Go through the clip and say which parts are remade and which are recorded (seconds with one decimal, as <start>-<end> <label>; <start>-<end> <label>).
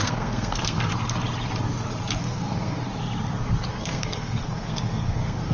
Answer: 0.0-0.9 remade; 0.9-2.2 recorded; 2.2-2.9 remade; 2.9-3.7 recorded; 3.7-5.5 remade